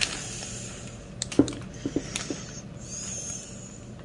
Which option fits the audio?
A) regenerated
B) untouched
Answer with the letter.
B